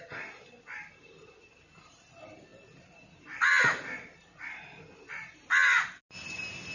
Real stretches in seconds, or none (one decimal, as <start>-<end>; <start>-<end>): 0.0-6.7